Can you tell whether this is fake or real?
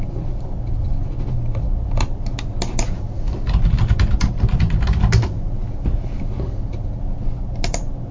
real